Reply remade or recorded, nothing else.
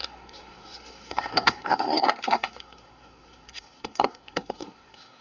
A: remade